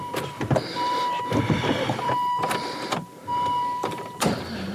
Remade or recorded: remade